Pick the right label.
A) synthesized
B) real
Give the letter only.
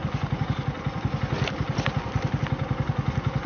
B